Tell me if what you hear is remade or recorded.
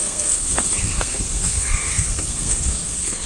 remade